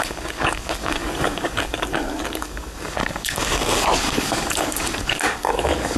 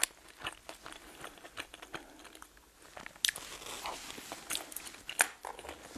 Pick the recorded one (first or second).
second